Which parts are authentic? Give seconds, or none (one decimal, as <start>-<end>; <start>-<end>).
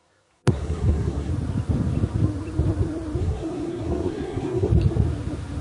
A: 1.3-3.2; 4.7-5.6